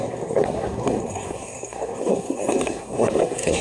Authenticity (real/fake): fake